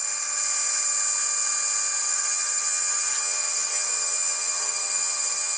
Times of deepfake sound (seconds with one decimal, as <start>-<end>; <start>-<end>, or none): 2.0-5.6